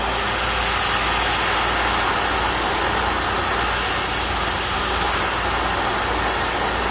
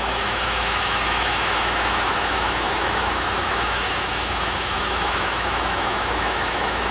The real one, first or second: first